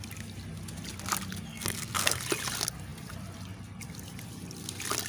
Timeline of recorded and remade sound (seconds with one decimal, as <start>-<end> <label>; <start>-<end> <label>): 0.0-1.5 recorded; 1.5-2.2 remade; 2.2-5.1 recorded